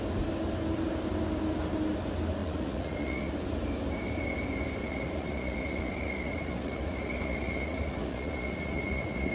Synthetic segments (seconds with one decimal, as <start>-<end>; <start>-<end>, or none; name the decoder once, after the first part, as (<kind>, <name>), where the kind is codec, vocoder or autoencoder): 2.4-3.3 (vocoder, Vocos); 4.8-9.3